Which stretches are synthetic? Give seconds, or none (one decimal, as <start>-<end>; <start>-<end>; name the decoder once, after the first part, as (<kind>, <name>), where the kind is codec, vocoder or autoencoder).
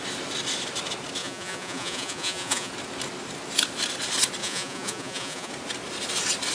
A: 1.2-2.7 (vocoder, Vocos); 4.4-5.5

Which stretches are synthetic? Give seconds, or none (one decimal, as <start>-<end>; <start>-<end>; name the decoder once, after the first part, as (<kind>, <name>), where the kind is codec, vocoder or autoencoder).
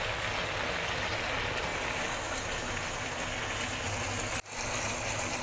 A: none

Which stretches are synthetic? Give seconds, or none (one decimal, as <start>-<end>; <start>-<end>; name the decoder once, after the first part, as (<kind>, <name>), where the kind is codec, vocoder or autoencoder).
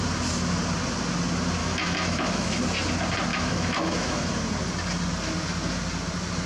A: 1.6-2.6 (autoencoder, DAC-VAE); 3.3-4.3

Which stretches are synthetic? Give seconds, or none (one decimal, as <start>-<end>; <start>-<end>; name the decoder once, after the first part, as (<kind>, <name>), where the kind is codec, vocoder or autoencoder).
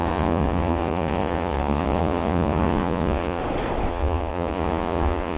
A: 0.0-3.4 (vocoder, Vocos); 3.9-5.4